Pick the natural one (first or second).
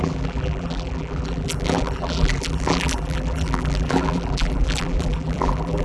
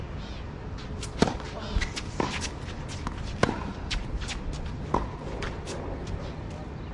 second